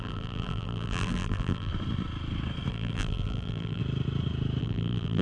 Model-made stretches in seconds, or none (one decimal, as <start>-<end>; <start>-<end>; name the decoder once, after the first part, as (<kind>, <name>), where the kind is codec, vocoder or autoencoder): 0.0-1.7 (vocoder, BigVGAN v2); 2.7-3.8; 4.6-5.2